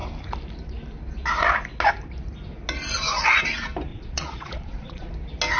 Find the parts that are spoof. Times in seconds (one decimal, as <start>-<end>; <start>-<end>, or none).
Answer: 3.9-5.1